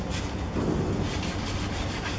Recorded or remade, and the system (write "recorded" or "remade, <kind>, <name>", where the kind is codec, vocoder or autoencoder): recorded